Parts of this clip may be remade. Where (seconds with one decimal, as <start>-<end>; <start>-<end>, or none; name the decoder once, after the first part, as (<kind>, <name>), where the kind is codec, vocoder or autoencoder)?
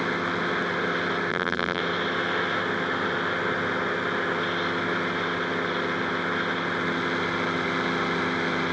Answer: 1.3-1.8 (vocoder, BigVGAN v2)